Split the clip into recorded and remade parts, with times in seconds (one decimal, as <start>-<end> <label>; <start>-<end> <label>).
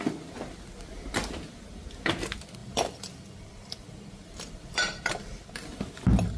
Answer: 0.0-2.6 recorded; 2.6-5.5 remade; 5.5-6.4 recorded